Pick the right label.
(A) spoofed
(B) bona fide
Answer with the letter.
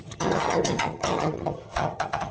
A